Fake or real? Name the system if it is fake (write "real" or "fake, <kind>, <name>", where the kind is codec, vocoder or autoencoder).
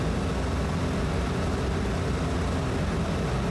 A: real